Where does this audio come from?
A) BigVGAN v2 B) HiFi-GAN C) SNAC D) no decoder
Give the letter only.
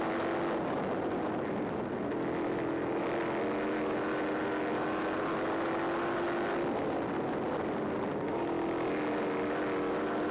D